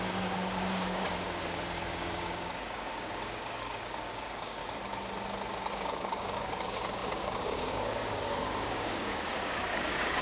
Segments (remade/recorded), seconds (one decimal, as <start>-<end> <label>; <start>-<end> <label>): 0.0-4.6 remade; 4.6-5.7 recorded; 5.7-10.2 remade